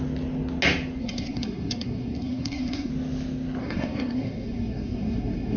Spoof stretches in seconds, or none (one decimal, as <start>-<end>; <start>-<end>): 1.0-2.9; 3.6-5.6